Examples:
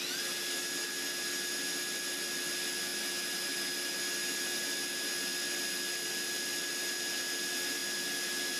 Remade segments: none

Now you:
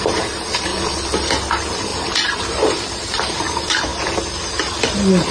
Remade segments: 0.0-0.7 (vocoder, BigVGAN v2); 1.5-3.9

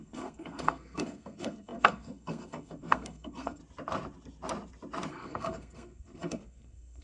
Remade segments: 0.0-3.6 (codec, SNAC); 5.1-7.0

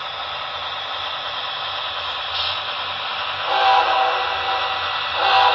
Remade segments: none